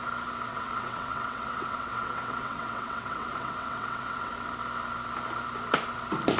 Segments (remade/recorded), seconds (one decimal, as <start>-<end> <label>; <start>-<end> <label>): 0.0-0.5 recorded; 0.5-4.3 remade; 4.3-6.4 recorded

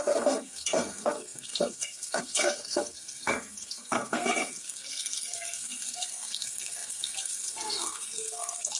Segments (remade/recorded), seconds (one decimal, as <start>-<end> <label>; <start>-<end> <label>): 0.0-8.8 remade

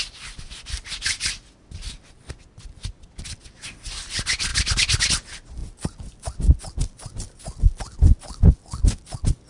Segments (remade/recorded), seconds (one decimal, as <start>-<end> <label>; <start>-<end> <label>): 0.0-9.5 recorded

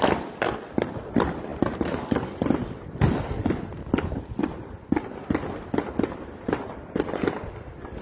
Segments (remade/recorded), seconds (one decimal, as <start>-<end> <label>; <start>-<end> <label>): 0.0-8.0 recorded

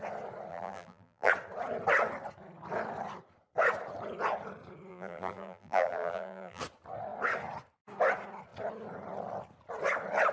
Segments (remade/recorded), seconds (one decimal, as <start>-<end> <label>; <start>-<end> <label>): 0.0-0.5 recorded; 0.5-1.3 remade; 1.3-4.9 recorded; 4.9-6.6 remade; 6.6-10.3 recorded

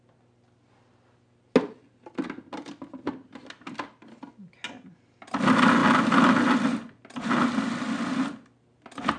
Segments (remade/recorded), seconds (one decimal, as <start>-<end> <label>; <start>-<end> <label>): 0.0-9.2 recorded

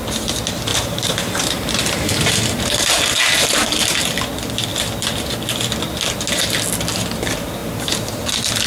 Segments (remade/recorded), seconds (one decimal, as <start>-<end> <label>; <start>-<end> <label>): 0.0-0.7 recorded; 0.7-2.9 remade; 2.9-8.7 recorded

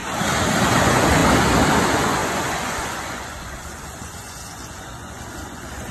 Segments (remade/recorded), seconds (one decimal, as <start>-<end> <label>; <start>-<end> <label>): 0.0-0.6 recorded; 0.6-1.2 remade; 1.2-1.7 recorded; 1.7-5.9 remade